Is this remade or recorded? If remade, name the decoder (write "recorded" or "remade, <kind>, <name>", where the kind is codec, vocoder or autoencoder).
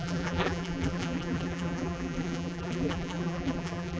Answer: remade, vocoder, BigVGAN v2